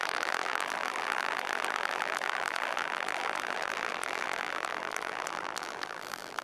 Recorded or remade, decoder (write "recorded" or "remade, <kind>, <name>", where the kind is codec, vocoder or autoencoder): remade, vocoder, BigVGAN v2